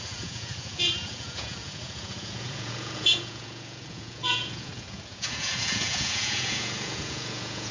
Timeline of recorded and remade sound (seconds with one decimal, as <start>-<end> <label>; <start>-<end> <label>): 0.0-7.7 remade